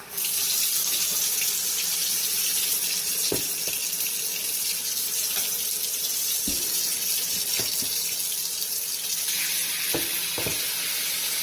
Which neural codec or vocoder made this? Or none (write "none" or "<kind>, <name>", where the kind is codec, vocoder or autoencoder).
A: none